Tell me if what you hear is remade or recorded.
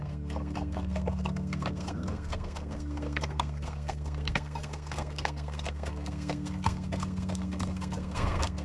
remade